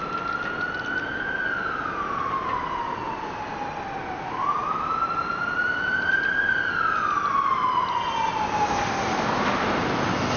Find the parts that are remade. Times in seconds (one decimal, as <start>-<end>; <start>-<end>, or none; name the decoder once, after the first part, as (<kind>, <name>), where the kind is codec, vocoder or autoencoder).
none